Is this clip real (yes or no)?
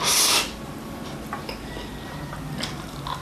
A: yes